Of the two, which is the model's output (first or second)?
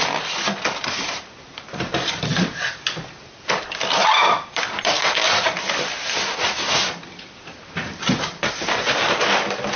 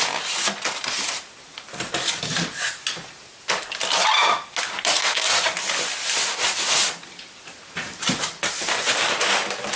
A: first